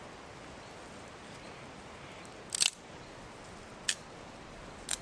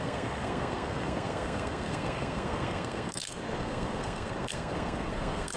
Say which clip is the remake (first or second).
second